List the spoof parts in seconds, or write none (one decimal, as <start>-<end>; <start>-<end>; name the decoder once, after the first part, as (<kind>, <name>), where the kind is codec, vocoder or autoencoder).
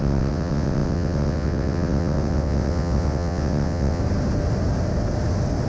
0.0-4.0 (vocoder, WaveNeXt)